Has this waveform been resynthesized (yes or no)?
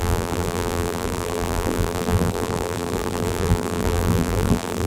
yes